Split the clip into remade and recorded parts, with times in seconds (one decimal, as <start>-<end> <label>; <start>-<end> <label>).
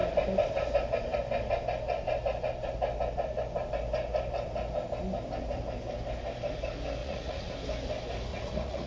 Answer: 0.0-7.0 recorded; 7.0-7.5 remade; 7.5-8.3 recorded; 8.3-8.9 remade